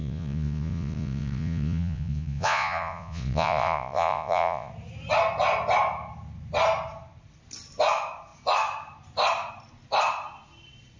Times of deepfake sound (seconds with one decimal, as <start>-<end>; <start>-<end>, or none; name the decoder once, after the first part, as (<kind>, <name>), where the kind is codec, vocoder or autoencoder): 0.0-4.7 (vocoder, Vocos)